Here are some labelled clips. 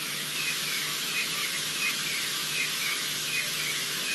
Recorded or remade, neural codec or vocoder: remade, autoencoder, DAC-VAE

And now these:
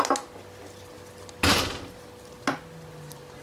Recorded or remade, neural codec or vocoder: recorded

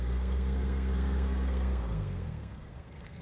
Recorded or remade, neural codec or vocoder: remade, codec, SNAC